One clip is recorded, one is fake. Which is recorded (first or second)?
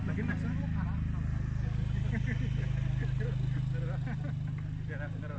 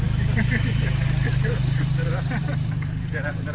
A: first